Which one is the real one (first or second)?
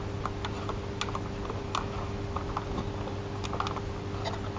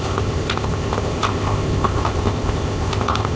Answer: first